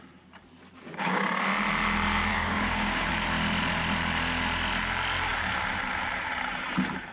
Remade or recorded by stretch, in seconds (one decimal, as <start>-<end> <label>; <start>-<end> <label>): 0.0-2.3 recorded; 2.3-3.1 remade; 3.1-7.1 recorded